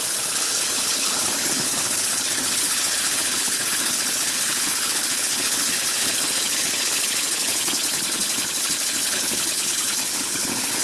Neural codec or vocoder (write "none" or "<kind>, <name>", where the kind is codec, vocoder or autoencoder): codec, HILCodec